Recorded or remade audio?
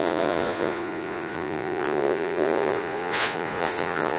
remade